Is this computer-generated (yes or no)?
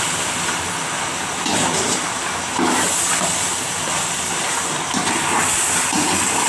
no